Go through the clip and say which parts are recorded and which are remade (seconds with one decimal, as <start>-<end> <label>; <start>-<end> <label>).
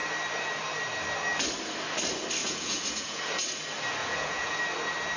0.0-2.4 recorded; 2.4-3.2 remade; 3.2-4.0 recorded; 4.0-4.6 remade; 4.6-5.2 recorded